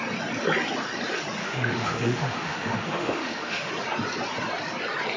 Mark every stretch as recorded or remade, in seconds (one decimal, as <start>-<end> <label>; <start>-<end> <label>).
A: 0.0-1.4 recorded; 1.4-3.7 remade; 3.7-5.2 recorded